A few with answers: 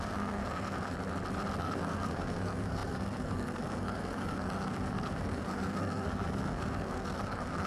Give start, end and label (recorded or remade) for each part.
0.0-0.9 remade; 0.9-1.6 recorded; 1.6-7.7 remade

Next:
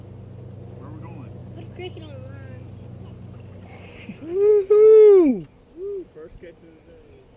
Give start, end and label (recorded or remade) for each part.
0.0-7.4 recorded

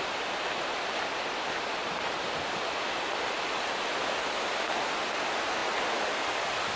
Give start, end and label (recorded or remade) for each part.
0.0-6.8 recorded

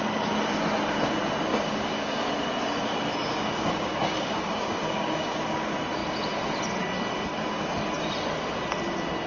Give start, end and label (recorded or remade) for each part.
0.0-1.5 recorded; 1.5-2.3 remade; 2.3-3.2 recorded; 3.2-5.6 remade; 5.6-9.3 recorded

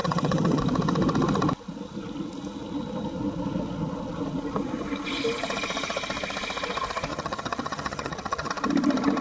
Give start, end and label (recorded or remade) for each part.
0.0-0.6 remade; 0.6-7.1 recorded; 7.1-8.5 remade; 8.5-9.2 recorded

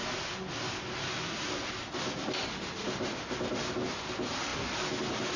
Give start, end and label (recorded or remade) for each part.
0.0-0.5 remade; 0.5-2.4 recorded; 2.4-3.6 remade; 3.6-5.4 recorded

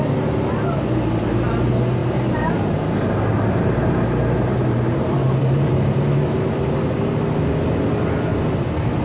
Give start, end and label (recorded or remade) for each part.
0.0-2.0 recorded; 2.0-6.2 remade; 6.2-9.0 recorded